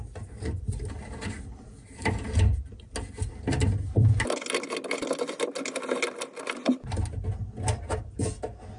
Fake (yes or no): no